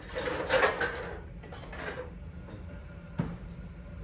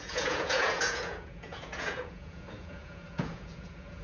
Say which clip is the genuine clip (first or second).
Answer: first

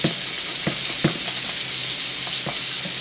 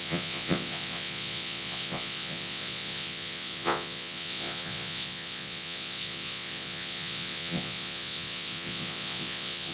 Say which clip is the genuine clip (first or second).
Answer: first